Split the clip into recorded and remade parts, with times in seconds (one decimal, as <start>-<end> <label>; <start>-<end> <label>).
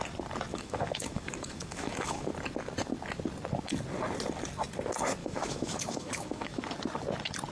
0.0-0.5 recorded; 0.5-2.3 remade; 2.3-5.2 recorded; 5.2-6.6 remade; 6.6-7.5 recorded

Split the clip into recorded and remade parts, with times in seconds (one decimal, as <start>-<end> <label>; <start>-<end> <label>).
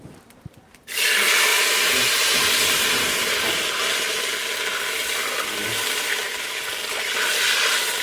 0.0-6.1 recorded; 6.1-6.6 remade; 6.6-8.0 recorded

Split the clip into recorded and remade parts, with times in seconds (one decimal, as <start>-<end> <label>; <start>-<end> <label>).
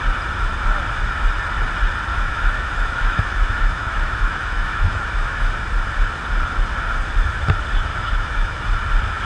0.0-2.1 recorded; 2.1-5.5 remade; 5.5-7.9 recorded; 7.9-8.6 remade; 8.6-9.2 recorded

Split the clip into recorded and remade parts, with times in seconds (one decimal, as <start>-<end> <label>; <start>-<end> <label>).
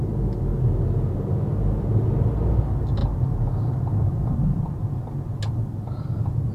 0.0-6.5 recorded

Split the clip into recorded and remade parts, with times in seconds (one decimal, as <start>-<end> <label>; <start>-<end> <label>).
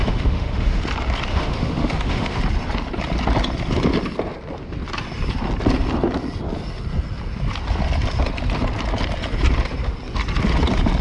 0.0-0.8 remade; 0.8-1.3 recorded; 1.3-2.4 remade; 2.4-11.0 recorded